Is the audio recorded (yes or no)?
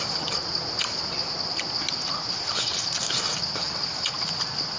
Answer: yes